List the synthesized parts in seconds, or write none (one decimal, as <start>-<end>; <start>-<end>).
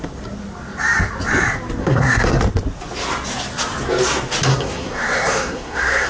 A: 1.8-2.4; 4.5-6.1